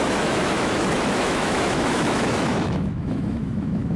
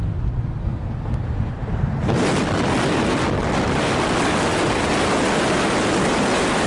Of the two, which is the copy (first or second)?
first